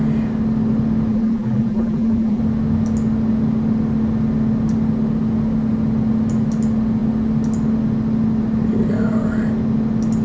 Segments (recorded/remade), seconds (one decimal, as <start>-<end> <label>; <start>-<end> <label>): 0.0-1.1 recorded; 1.1-2.4 remade; 2.4-10.2 recorded